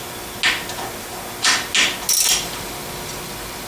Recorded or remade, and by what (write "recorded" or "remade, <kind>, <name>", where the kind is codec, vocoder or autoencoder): recorded